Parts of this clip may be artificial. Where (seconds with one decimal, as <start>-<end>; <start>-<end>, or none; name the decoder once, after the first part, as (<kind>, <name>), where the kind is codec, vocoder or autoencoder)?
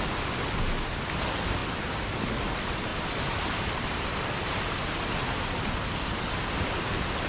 2.9-4.6 (vocoder, BigVGAN v2)